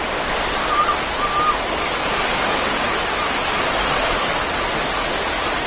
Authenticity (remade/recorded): recorded